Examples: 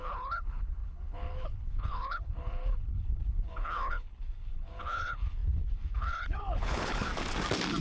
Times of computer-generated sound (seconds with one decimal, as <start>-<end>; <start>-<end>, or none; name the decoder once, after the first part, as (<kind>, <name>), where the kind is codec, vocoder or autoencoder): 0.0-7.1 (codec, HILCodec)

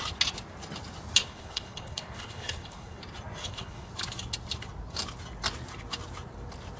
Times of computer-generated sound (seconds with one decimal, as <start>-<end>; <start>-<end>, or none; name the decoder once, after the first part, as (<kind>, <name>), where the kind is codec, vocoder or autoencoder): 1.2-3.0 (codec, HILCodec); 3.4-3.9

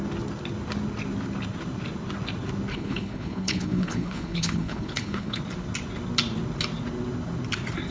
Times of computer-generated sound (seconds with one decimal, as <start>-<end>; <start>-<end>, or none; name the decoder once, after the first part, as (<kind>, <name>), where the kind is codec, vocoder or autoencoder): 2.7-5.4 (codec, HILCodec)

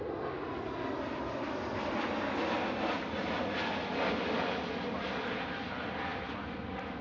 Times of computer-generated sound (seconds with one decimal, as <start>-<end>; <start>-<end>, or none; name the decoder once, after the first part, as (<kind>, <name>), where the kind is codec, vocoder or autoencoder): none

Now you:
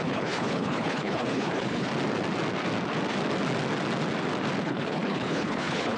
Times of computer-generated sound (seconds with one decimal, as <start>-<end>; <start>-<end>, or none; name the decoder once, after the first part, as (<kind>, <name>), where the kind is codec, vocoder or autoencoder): 0.0-1.9 (codec, HILCodec); 4.6-6.0

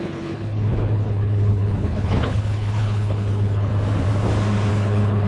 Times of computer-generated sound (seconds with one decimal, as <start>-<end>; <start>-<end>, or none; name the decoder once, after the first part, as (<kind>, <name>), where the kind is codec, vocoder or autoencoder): 0.0-3.7 (codec, HILCodec); 4.7-5.3

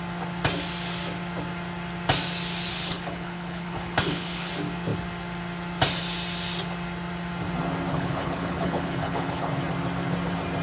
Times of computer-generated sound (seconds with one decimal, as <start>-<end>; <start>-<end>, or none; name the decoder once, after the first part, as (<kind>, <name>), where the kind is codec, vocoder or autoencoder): 2.7-4.5 (codec, HILCodec); 7.9-9.5

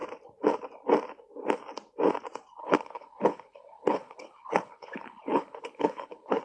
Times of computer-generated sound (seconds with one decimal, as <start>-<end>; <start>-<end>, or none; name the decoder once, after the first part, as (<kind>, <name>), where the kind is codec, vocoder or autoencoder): 2.6-6.4 (codec, HILCodec)